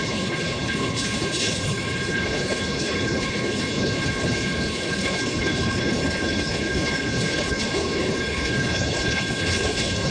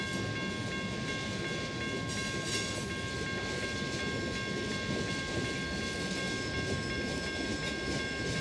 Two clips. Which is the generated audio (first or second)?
first